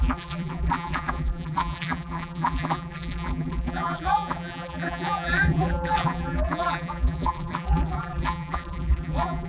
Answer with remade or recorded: remade